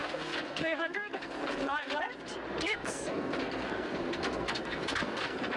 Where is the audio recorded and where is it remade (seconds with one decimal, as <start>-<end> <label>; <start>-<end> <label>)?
0.0-2.1 remade; 2.1-2.6 recorded; 2.6-5.6 remade